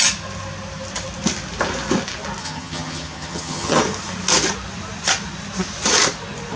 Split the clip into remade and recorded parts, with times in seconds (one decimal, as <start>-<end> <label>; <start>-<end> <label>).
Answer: 0.0-2.4 recorded; 2.4-3.8 remade; 3.8-6.6 recorded